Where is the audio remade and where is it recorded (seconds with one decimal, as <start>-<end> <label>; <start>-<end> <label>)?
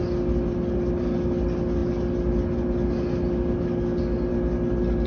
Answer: 0.0-5.1 recorded